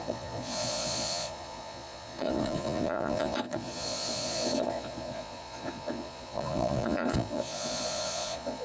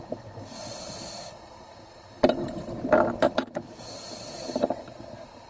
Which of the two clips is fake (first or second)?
first